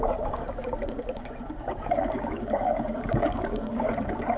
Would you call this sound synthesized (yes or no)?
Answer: yes